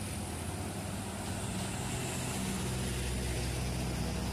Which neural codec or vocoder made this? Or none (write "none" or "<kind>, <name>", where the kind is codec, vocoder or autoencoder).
none